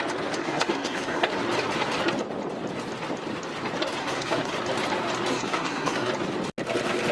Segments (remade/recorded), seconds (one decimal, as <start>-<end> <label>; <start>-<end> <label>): 0.0-0.4 recorded; 0.4-1.3 remade; 1.3-4.0 recorded; 4.0-4.5 remade; 4.5-5.3 recorded; 5.3-6.1 remade; 6.1-7.1 recorded